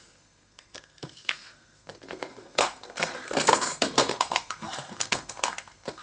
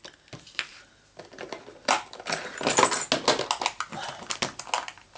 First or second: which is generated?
first